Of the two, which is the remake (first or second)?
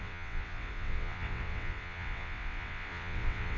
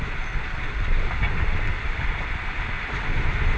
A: first